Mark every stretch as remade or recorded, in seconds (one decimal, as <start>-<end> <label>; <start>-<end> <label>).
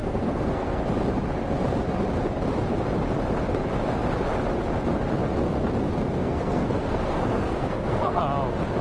0.0-0.8 remade; 0.8-6.2 recorded; 6.2-8.2 remade; 8.2-8.8 recorded